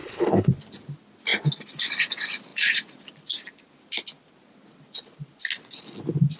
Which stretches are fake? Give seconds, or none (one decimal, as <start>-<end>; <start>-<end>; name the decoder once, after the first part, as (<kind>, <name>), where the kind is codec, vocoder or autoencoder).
0.0-0.5 (codec, HILCodec)